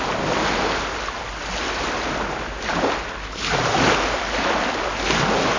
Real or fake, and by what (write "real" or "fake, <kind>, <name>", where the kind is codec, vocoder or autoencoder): real